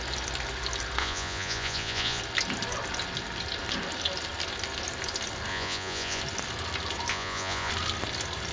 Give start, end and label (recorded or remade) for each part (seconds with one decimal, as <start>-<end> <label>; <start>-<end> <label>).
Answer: 0.0-1.0 recorded; 1.0-2.2 remade; 2.2-5.5 recorded; 5.5-6.2 remade; 6.2-7.1 recorded; 7.1-7.7 remade; 7.7-8.5 recorded